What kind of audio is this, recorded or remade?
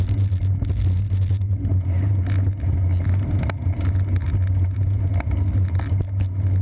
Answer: recorded